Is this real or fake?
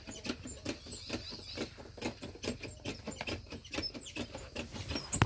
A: real